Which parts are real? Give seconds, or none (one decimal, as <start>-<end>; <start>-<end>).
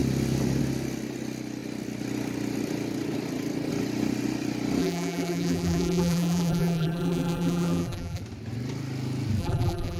0.0-4.8; 8.2-9.4